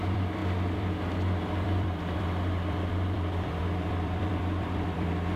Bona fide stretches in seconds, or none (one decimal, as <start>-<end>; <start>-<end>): none